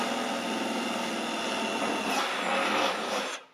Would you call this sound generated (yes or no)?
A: no